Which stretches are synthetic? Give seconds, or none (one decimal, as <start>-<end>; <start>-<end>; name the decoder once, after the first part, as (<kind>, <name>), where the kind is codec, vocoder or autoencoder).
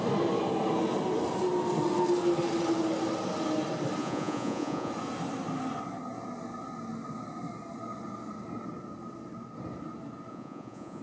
4.0-4.9 (vocoder, Vocos); 10.3-11.0